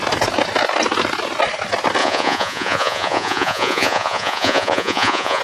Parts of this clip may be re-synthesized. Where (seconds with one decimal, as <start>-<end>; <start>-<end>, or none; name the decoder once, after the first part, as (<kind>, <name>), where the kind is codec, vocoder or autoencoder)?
2.0-5.4 (vocoder, Vocos)